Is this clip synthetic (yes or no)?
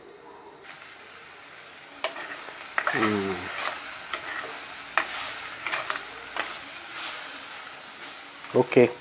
no